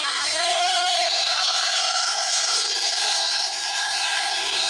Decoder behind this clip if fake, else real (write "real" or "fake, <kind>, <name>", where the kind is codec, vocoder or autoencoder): fake, codec, SNAC